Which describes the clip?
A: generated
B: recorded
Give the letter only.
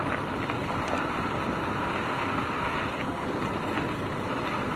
B